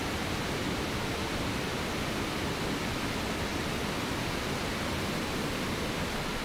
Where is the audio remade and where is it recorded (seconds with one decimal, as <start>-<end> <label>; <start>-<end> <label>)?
0.0-1.7 recorded; 1.7-2.5 remade; 2.5-6.4 recorded